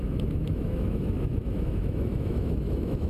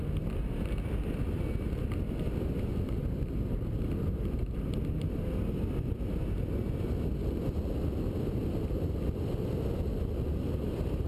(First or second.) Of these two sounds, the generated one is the first